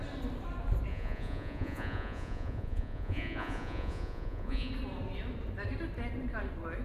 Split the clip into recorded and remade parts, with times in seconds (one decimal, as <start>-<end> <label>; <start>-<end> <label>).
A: 0.0-0.9 recorded; 0.9-4.7 remade; 4.7-6.8 recorded